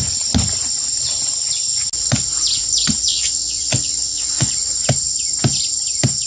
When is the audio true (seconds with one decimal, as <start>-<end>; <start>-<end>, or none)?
0.0-3.1; 4.5-6.3